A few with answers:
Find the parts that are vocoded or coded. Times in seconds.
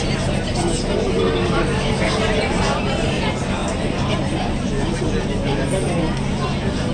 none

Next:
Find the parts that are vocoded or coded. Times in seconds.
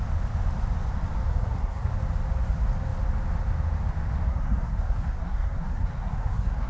1.3-1.9 (codec, SNAC); 4.3-6.7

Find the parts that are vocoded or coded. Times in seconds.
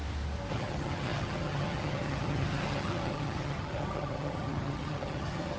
0.5-5.6 (vocoder, HiFi-GAN)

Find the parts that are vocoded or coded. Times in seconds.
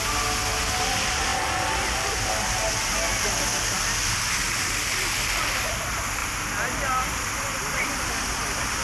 none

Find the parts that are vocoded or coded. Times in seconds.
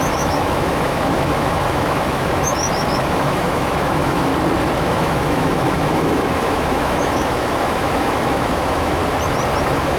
0.0-4.3 (autoencoder, DAC-VAE); 4.8-9.0; 9.6-10.0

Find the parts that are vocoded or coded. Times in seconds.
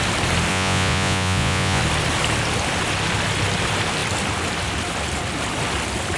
0.5-1.8 (vocoder, Vocos)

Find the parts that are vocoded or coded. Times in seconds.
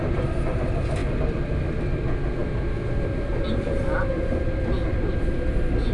2.4-4.0 (vocoder, BigVGAN v2)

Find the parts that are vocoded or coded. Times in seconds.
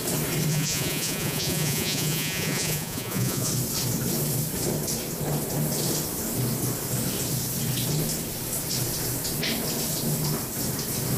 0.5-3.5 (vocoder, Vocos)